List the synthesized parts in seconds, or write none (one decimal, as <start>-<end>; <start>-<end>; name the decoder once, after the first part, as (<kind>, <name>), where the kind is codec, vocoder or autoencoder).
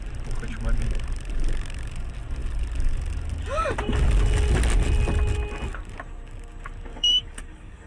6.9-7.9 (codec, DAC)